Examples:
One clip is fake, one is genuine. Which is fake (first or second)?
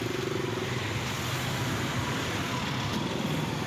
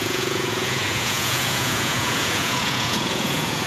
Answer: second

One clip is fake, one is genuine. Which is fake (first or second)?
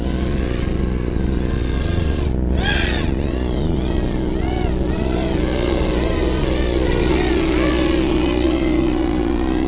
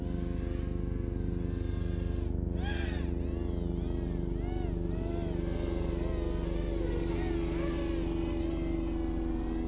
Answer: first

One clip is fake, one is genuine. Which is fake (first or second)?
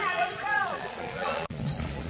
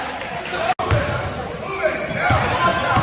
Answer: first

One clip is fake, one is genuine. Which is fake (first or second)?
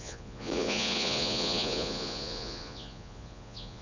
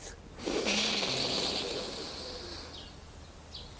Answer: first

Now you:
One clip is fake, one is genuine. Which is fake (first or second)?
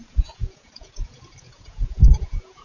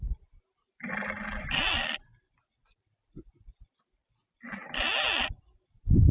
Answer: first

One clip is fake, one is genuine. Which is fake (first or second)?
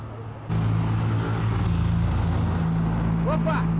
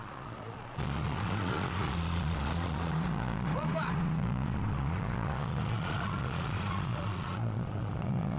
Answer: second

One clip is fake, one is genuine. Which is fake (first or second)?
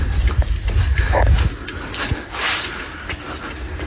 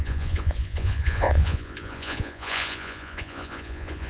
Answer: second